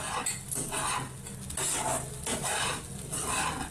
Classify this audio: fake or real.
real